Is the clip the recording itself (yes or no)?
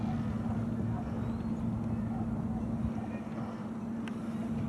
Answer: yes